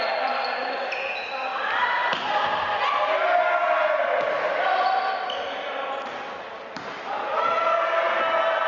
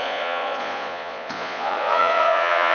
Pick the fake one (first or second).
second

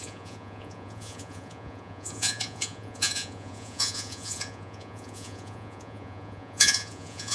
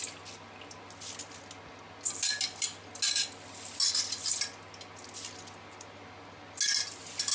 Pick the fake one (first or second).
first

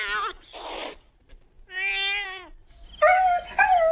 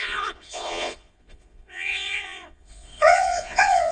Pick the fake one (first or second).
second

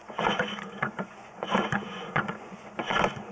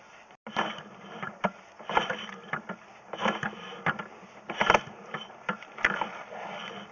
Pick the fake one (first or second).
first